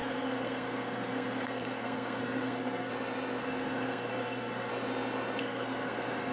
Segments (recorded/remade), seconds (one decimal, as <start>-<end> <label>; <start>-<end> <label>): 0.0-2.9 remade; 2.9-3.4 recorded; 3.4-4.7 remade; 4.7-5.4 recorded; 5.4-6.3 remade